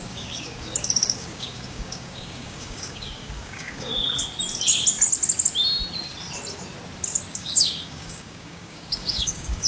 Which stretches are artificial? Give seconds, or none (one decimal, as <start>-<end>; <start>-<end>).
0.0-3.9; 7.3-9.7